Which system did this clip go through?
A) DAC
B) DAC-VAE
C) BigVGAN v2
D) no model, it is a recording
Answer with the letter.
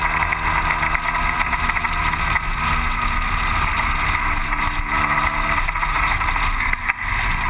D